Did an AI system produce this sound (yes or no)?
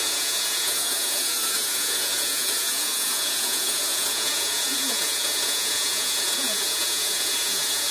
yes